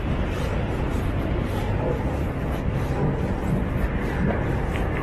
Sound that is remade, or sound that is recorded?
recorded